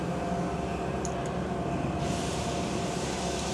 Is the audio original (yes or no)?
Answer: yes